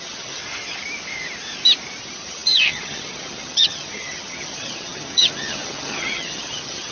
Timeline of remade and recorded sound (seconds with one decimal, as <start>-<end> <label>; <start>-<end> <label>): 0.0-0.4 remade; 0.4-2.0 recorded; 2.0-6.9 remade